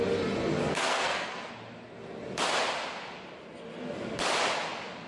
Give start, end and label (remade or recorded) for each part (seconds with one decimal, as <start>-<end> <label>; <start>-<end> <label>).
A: 0.0-0.7 recorded; 0.7-1.5 remade; 1.5-5.1 recorded

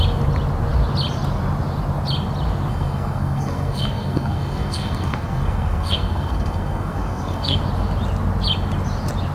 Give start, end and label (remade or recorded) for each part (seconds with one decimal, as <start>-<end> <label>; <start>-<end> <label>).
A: 0.0-2.7 recorded; 2.7-7.6 remade; 7.6-9.3 recorded

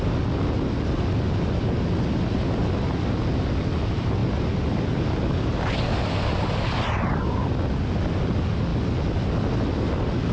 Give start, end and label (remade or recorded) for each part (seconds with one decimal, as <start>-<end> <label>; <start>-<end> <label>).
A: 0.0-10.3 recorded